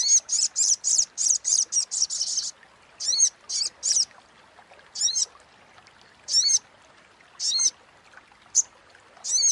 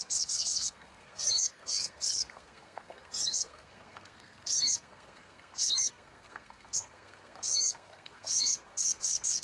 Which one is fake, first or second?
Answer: second